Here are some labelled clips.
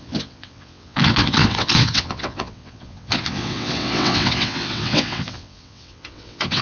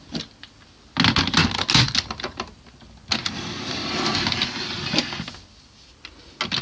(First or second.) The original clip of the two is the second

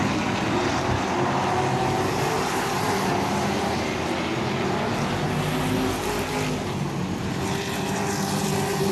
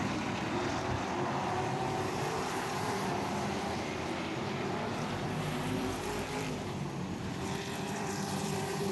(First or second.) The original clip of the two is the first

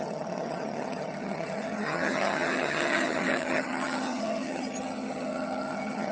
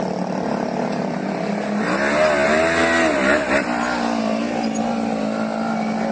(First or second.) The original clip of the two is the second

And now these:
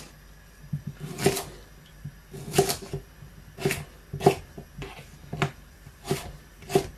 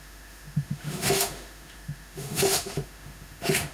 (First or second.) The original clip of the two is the first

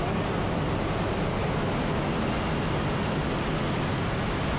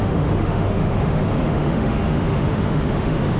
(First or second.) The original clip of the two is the first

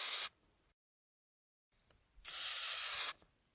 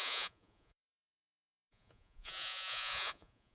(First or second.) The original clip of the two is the first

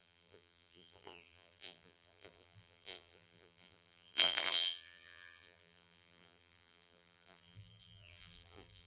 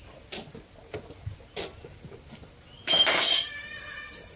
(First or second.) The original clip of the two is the second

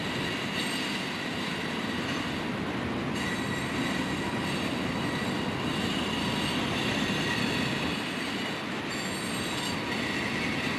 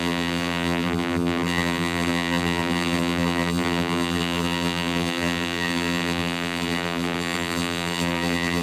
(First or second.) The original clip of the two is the first